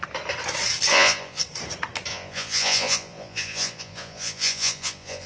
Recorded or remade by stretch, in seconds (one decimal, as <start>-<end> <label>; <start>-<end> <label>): 0.0-0.9 recorded; 0.9-1.4 remade; 1.4-2.1 recorded; 2.1-5.3 remade